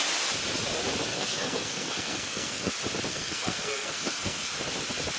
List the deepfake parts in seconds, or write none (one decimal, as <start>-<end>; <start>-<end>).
1.1-2.7; 3.1-4.5